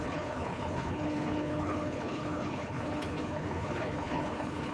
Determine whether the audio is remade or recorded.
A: remade